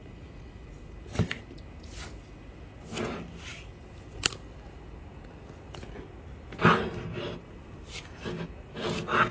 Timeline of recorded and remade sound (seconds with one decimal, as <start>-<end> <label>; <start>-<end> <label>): 0.0-0.7 remade; 0.7-9.3 recorded